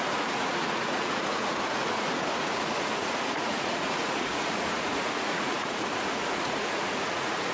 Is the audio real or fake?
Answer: fake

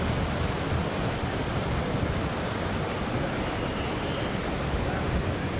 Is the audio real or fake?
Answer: real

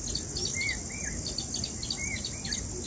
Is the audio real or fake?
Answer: real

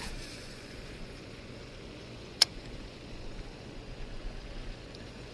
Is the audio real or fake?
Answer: fake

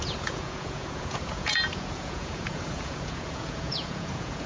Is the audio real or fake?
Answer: fake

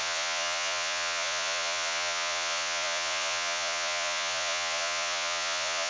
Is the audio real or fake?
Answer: fake